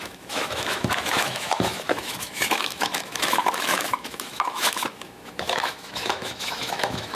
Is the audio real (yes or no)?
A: no